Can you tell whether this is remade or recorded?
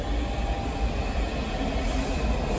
recorded